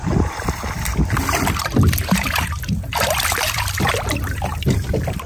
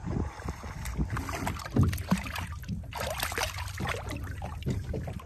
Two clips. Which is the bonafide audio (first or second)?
second